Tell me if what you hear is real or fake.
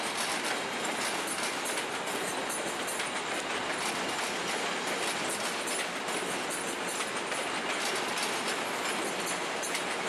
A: real